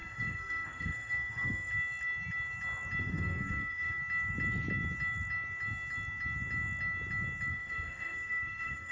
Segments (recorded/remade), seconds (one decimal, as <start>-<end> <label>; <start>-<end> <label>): 0.0-1.7 remade; 1.7-3.0 recorded; 3.0-4.0 remade; 4.0-7.5 recorded; 7.5-8.9 remade